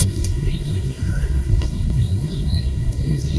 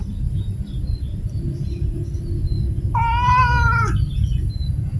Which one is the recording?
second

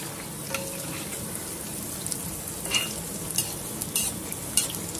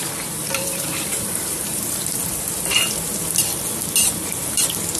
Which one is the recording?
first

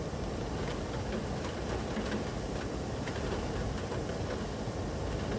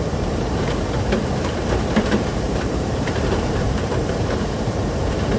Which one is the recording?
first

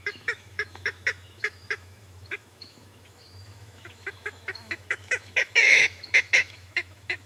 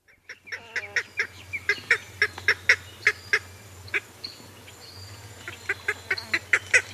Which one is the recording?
second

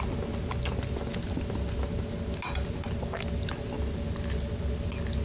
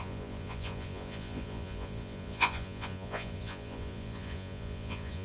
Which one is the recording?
first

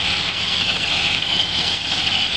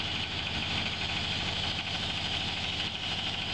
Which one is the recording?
second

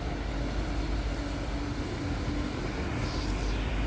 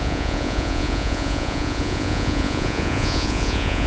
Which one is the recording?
first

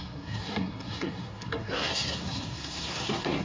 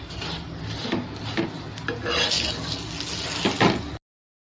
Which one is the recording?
second